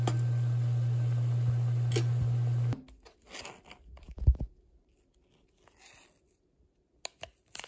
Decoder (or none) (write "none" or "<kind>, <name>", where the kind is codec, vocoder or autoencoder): none